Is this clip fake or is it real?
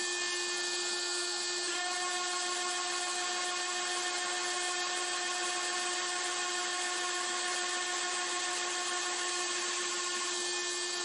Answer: real